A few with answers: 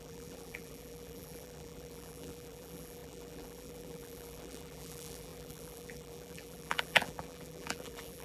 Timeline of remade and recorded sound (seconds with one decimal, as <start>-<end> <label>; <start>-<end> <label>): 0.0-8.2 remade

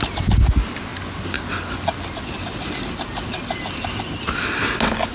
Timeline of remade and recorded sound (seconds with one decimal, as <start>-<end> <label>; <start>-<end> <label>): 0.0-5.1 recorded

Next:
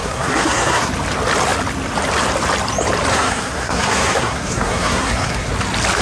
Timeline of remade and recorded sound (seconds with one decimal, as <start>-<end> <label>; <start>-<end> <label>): 0.0-0.9 remade; 0.9-3.1 recorded; 3.1-5.5 remade; 5.5-6.0 recorded

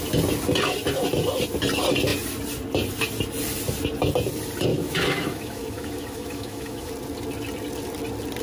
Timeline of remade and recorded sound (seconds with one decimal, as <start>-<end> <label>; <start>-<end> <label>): 0.0-4.7 recorded; 4.7-6.9 remade; 6.9-8.4 recorded

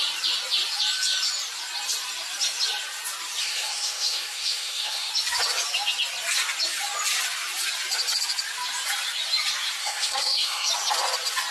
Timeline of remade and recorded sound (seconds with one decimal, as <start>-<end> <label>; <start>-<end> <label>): 0.0-3.4 recorded; 3.4-5.1 remade; 5.1-9.8 recorded; 9.8-10.7 remade; 10.7-11.5 recorded

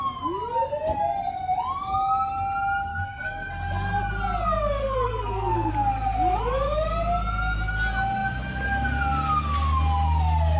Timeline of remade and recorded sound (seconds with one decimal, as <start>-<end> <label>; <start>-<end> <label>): 0.0-2.9 recorded; 2.9-3.5 remade; 3.5-4.8 recorded; 4.8-5.7 remade; 5.7-10.6 recorded

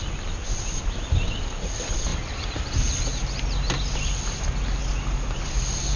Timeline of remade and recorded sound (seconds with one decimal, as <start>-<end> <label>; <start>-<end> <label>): 0.0-6.0 recorded

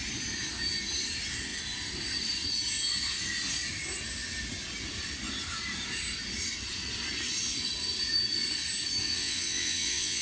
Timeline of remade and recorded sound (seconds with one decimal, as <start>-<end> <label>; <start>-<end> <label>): 0.0-9.0 recorded; 9.0-10.2 remade